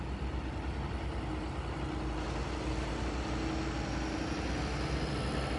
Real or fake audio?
real